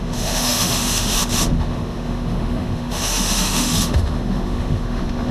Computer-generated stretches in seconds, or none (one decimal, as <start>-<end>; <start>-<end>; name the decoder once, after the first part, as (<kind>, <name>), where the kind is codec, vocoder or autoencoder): 0.0-5.3 (autoencoder, DAC-VAE)